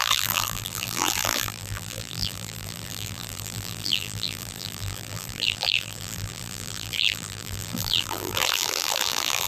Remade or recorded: remade